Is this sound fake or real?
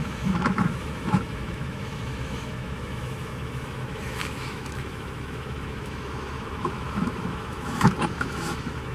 fake